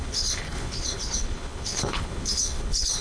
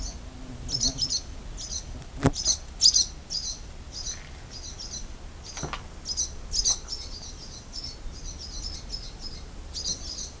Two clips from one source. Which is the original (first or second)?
second